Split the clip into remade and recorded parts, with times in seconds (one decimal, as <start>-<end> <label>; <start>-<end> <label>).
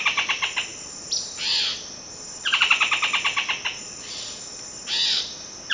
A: 0.0-5.7 recorded